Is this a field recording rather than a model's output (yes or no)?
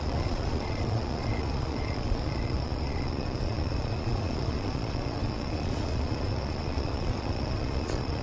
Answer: no